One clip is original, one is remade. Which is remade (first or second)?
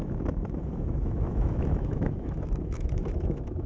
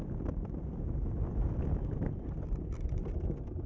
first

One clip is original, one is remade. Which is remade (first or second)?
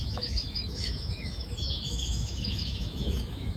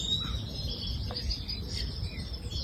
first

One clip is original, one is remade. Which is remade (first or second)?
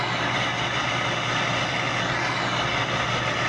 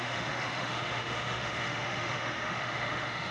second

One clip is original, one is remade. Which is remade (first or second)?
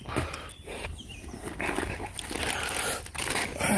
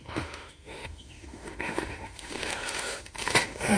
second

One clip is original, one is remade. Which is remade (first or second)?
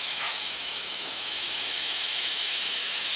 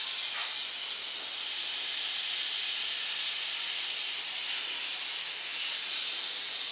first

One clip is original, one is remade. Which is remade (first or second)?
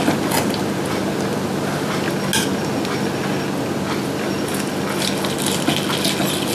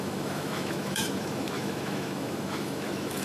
second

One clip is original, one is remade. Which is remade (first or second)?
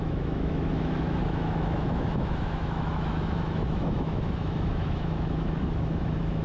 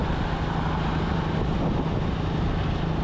first